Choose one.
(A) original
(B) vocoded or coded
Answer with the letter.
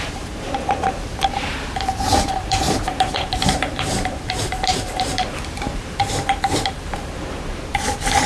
B